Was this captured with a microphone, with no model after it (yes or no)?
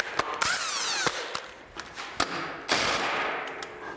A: yes